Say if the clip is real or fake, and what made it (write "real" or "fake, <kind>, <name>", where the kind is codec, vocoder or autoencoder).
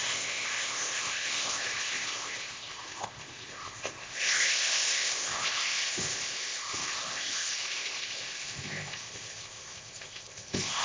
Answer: fake, codec, ZipCodec